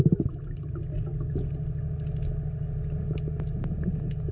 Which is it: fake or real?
real